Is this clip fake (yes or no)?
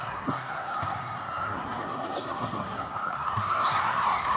yes